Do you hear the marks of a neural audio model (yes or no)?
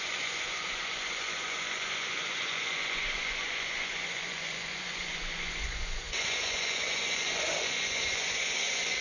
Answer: yes